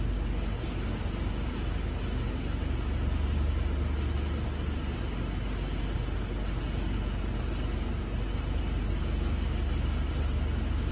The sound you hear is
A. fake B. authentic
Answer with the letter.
B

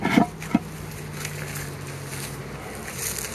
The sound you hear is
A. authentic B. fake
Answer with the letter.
A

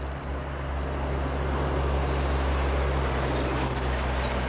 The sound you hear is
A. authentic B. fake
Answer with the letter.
A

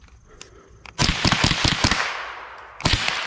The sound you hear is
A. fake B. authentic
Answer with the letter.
B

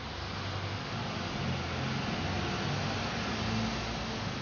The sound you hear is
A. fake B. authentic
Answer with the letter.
B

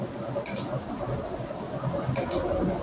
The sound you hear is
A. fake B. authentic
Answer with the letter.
B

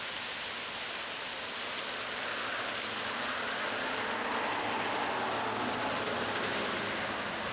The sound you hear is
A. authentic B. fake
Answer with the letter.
A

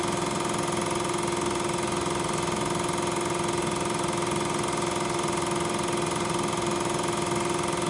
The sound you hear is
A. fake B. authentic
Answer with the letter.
B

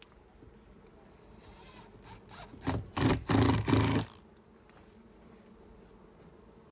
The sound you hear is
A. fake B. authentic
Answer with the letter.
B